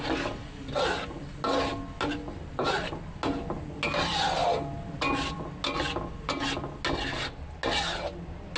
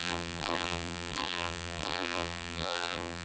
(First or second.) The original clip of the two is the first